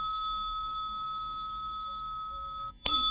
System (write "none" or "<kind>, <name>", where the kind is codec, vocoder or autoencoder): codec, SNAC